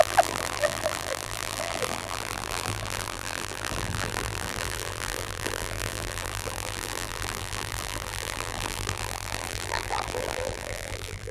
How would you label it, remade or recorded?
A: remade